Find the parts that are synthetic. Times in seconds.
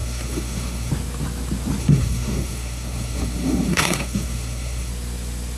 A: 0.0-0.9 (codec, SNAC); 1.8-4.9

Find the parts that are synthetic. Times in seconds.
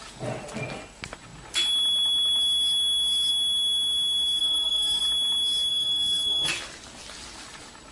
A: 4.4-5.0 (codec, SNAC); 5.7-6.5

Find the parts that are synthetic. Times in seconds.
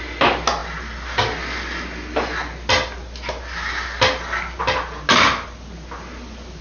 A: none